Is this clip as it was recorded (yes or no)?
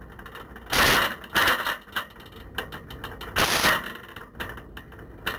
yes